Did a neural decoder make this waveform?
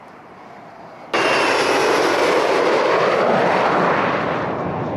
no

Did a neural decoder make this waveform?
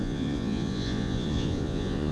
yes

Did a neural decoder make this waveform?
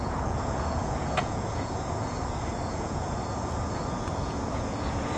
yes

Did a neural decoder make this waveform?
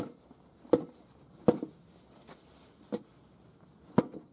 no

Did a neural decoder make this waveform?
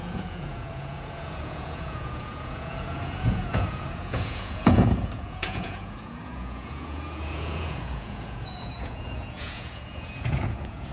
yes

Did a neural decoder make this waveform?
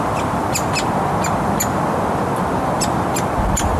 no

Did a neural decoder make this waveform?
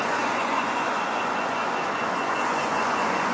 yes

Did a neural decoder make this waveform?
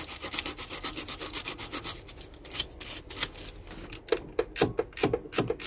no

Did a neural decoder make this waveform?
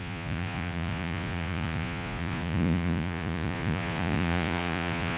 yes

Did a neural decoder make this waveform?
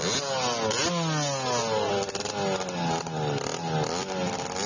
no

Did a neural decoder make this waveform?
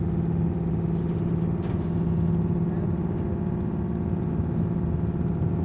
no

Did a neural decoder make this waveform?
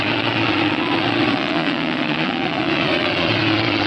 yes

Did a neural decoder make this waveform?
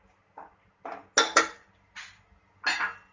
no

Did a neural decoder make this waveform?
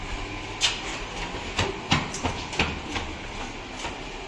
no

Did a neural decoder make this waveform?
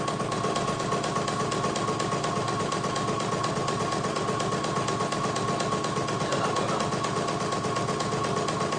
no